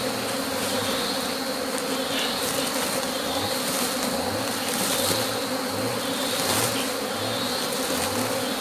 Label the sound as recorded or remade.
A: recorded